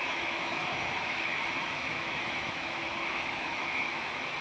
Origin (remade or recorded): remade